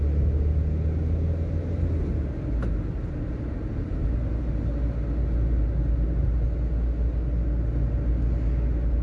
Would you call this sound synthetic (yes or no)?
no